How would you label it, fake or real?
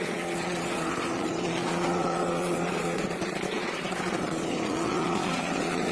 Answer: fake